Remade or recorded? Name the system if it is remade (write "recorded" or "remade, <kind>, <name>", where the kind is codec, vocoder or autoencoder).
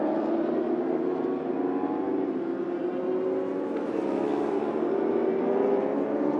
recorded